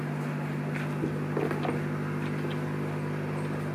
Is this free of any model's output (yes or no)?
yes